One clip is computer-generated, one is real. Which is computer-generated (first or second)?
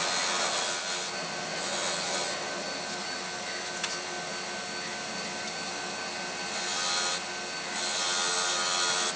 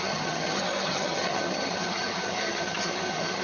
second